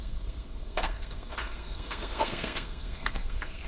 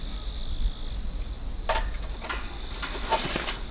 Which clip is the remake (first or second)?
first